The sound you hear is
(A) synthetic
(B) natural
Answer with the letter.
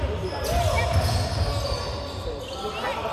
B